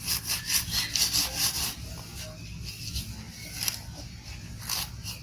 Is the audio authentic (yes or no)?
yes